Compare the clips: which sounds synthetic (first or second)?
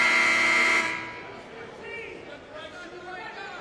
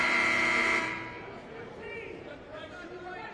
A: second